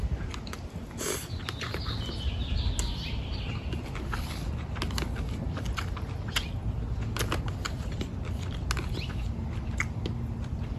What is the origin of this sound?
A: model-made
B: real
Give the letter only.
B